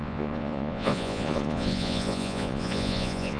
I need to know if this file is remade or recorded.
remade